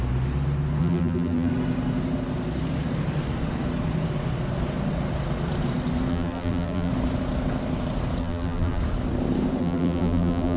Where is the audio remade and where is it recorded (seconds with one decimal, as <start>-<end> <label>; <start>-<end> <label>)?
0.0-0.8 recorded; 0.8-1.5 remade; 1.5-6.1 recorded; 6.1-6.9 remade; 6.9-8.2 recorded; 8.2-8.8 remade; 8.8-9.6 recorded; 9.6-10.6 remade